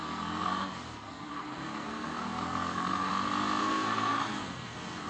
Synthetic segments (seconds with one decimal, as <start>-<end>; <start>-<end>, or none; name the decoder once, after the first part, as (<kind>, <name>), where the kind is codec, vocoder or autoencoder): 0.0-3.1 (codec, SNAC); 3.6-5.1